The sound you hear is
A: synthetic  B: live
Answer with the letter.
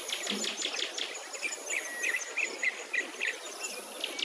B